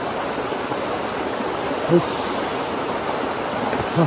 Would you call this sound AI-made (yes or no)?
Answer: no